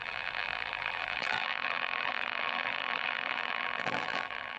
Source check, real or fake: fake